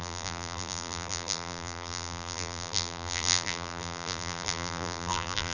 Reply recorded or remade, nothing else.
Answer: remade